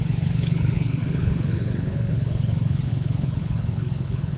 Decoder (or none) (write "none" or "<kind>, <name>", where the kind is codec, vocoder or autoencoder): codec, HILCodec